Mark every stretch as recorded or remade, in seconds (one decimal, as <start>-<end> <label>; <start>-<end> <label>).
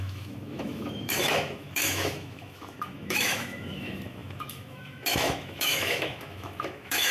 0.0-7.1 remade